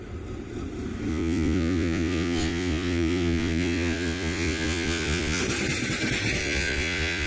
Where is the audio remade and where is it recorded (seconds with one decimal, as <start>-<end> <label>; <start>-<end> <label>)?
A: 0.0-1.1 recorded; 1.1-5.4 remade; 5.4-6.4 recorded; 6.4-7.3 remade